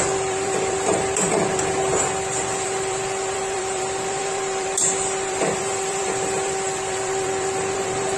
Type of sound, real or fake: fake